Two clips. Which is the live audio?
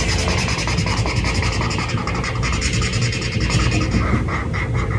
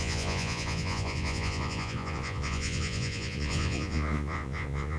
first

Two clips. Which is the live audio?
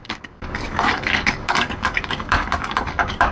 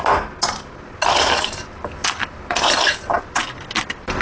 second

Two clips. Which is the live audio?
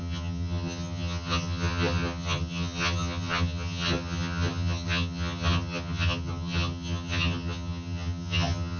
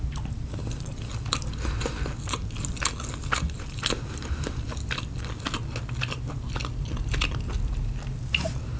second